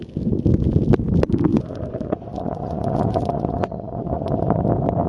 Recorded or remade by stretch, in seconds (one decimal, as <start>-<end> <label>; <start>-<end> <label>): 0.0-1.5 recorded; 1.5-4.6 remade; 4.6-5.1 recorded